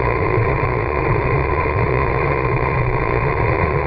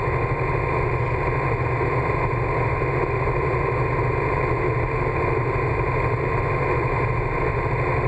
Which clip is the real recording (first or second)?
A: second